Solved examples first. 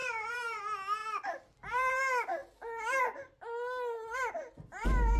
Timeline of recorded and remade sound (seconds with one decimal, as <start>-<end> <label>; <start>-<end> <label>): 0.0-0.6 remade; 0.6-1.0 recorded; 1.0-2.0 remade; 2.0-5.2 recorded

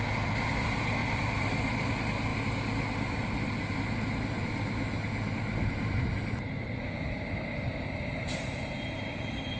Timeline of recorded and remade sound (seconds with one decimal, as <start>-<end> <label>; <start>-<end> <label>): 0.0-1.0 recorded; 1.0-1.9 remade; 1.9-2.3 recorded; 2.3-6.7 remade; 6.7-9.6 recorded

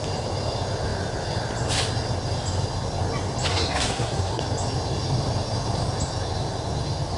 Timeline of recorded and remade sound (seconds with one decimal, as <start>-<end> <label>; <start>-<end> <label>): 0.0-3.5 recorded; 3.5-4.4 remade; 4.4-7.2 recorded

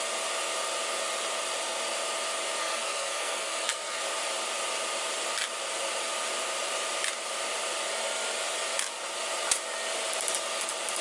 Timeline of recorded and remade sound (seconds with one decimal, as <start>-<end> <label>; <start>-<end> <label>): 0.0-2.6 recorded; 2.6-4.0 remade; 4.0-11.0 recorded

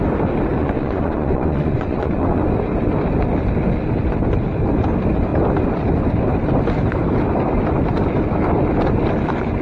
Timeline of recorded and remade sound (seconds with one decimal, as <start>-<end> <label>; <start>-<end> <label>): 0.0-0.5 recorded; 0.5-2.4 remade; 2.4-9.6 recorded

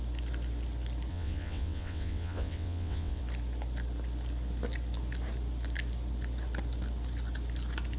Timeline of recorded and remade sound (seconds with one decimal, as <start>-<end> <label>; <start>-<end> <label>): 0.0-1.1 recorded; 1.1-3.2 remade; 3.2-8.0 recorded